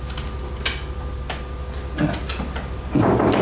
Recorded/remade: recorded